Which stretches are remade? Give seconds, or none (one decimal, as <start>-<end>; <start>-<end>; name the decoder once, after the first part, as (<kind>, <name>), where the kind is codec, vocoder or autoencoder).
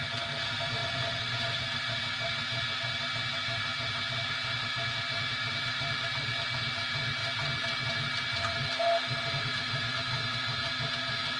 0.8-1.6 (vocoder, Vocos)